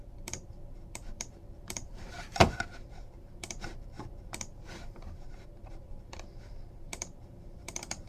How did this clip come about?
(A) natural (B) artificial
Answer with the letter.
B